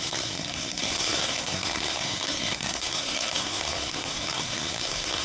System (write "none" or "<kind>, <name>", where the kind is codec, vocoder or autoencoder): codec, SNAC